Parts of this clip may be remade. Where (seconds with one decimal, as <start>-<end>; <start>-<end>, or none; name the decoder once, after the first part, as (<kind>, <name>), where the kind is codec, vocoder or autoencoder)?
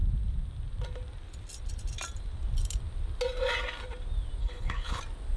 4.4-5.0 (codec, HILCodec)